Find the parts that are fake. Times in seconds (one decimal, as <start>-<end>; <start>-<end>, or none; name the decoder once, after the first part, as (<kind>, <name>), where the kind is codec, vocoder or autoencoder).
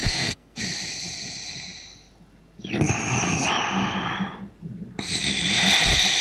0.0-0.6 (codec, SNAC)